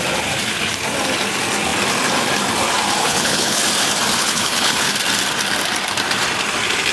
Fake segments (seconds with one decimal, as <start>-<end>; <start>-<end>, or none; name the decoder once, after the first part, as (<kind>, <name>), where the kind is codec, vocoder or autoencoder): 3.0-3.6 (codec, HILCodec); 4.2-4.9